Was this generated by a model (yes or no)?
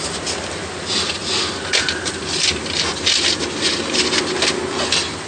no